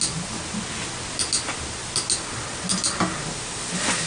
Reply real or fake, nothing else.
real